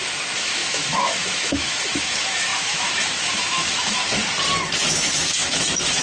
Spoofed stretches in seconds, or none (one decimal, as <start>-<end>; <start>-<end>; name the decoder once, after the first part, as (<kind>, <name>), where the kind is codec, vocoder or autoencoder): 0.0-4.0 (autoencoder, DAC-VAE); 4.8-6.0